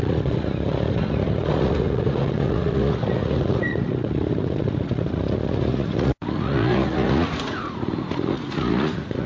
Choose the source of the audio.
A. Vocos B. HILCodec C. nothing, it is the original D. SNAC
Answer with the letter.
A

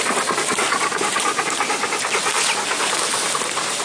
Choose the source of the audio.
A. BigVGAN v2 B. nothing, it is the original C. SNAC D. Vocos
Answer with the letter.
A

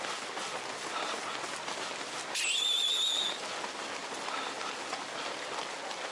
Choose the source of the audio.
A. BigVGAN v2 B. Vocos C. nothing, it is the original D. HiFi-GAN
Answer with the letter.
C